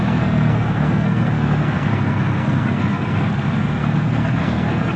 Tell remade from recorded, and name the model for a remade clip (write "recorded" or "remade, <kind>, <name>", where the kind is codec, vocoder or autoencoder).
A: remade, codec, SNAC